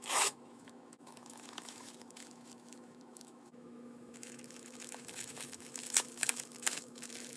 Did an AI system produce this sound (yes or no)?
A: yes